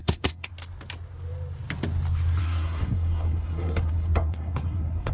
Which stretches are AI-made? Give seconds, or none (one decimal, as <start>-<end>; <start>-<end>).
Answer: 0.0-0.5; 2.4-5.1